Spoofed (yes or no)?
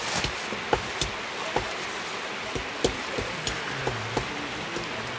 no